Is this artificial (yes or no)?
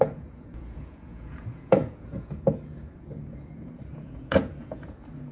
yes